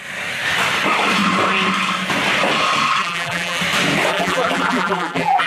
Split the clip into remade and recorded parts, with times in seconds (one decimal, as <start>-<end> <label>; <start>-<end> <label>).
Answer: 0.0-3.0 recorded; 3.0-3.6 remade; 3.6-4.1 recorded; 4.1-5.5 remade